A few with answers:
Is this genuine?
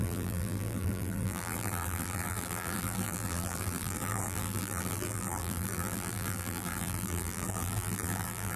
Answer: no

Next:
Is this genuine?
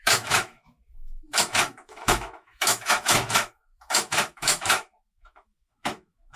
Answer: no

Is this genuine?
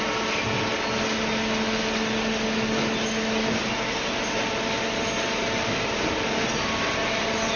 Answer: yes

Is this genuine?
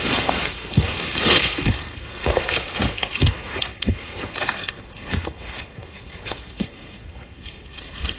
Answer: no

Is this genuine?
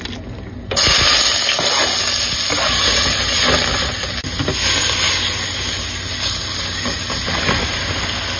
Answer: yes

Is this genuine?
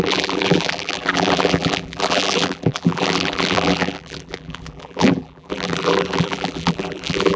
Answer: no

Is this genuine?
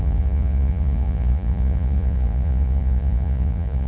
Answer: no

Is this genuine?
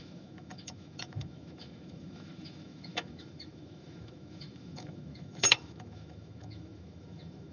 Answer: no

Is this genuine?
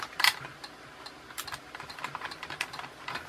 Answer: yes